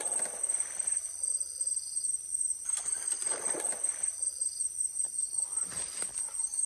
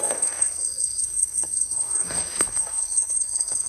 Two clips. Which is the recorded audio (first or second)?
first